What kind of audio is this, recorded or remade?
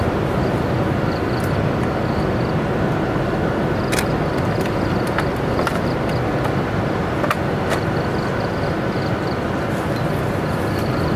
recorded